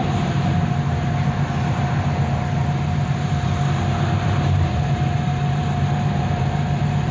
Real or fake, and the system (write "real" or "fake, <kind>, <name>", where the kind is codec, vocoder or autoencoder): fake, vocoder, BigVGAN v2